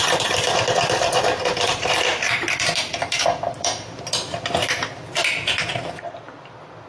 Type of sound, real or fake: fake